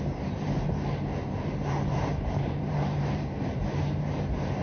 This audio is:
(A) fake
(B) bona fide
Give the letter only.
A